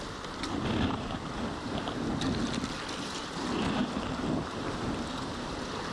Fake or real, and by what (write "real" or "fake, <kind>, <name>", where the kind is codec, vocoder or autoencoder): real